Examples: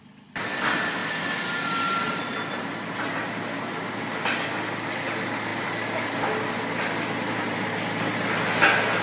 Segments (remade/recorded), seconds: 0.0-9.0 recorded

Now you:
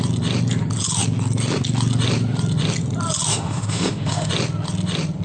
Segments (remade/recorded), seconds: 0.0-3.3 recorded; 3.3-4.3 remade; 4.3-5.2 recorded

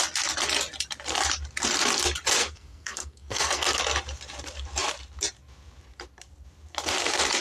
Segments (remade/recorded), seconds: 0.0-2.4 recorded; 2.4-3.8 remade; 3.8-7.4 recorded

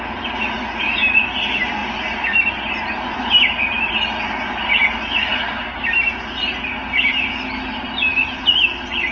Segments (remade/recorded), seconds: 0.0-9.1 recorded